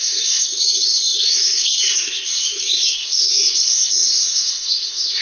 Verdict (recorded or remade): remade